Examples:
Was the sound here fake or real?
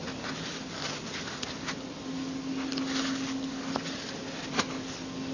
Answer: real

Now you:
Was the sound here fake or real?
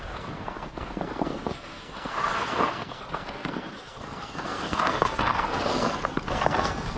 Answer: fake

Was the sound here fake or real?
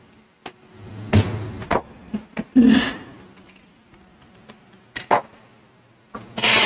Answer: real